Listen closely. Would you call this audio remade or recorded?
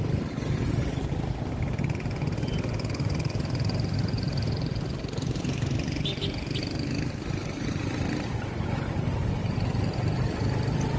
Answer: recorded